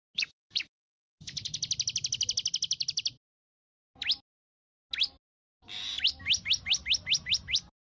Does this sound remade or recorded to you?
recorded